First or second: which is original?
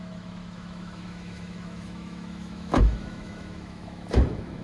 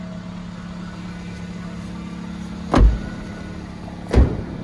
second